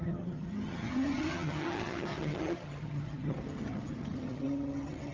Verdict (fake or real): fake